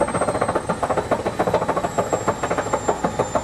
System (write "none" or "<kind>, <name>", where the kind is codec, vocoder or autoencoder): none